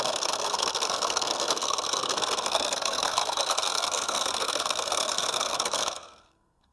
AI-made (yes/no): yes